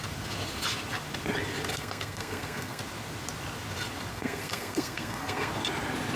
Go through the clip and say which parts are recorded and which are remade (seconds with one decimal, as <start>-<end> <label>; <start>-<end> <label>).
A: 0.0-1.7 recorded; 1.7-2.8 remade; 2.8-4.1 recorded; 4.1-5.5 remade; 5.5-6.2 recorded